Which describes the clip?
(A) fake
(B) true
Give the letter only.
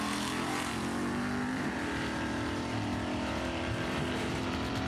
A